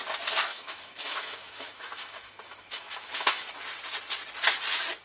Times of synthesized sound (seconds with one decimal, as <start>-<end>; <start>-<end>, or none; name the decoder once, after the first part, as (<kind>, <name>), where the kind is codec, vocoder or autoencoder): 0.5-3.5 (autoencoder, DAC-VAE)